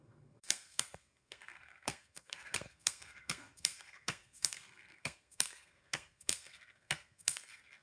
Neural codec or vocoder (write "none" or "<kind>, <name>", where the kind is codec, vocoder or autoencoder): codec, SNAC